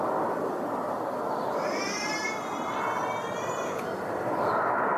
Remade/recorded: recorded